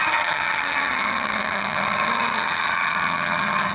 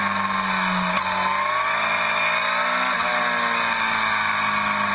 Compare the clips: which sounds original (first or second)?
second